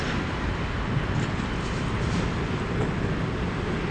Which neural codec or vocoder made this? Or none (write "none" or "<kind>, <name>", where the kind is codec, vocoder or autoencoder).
none